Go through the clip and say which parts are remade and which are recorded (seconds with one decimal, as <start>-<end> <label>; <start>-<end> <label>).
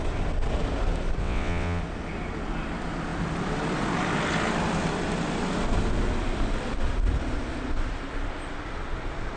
0.0-1.2 recorded; 1.2-1.8 remade; 1.8-9.4 recorded